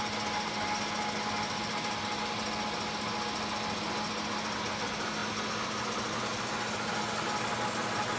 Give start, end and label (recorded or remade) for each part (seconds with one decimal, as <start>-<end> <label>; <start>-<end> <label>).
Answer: 0.0-8.2 recorded